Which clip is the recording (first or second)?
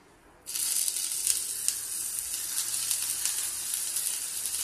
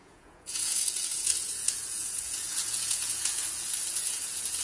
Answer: first